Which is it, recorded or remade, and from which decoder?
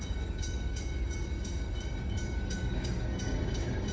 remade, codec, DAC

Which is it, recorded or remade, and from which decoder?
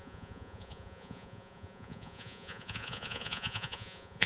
remade, vocoder, Vocos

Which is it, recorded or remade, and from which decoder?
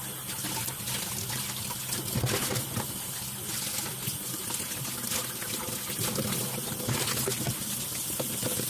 recorded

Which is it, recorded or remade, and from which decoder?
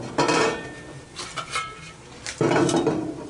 remade, vocoder, BigVGAN v2